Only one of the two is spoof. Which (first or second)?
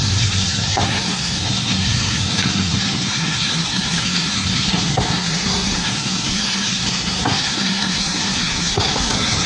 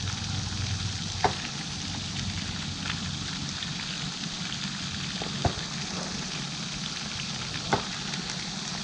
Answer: first